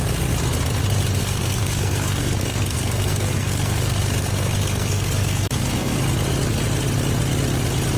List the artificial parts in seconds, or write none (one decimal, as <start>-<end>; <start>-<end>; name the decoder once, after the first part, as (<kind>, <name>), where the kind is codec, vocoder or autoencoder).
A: 1.2-6.0 (codec, SNAC)